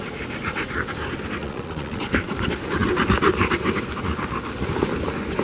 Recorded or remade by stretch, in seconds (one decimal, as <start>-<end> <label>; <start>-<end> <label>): 0.0-1.4 recorded; 1.4-2.0 remade; 2.0-5.4 recorded